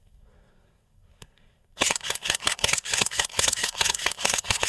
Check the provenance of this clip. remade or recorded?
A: remade